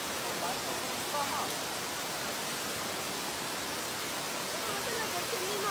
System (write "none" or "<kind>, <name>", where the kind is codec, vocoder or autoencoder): none